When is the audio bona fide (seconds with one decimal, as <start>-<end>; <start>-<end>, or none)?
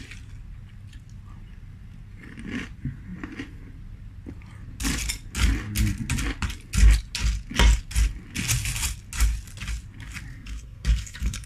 0.0-10.3